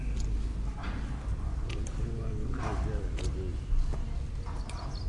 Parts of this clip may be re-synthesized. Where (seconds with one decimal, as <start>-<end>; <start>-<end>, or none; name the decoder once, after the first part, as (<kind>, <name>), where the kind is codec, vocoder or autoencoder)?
none